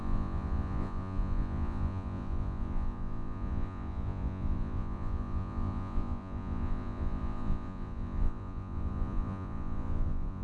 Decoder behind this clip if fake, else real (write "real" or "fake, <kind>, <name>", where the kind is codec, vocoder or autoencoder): fake, vocoder, Vocos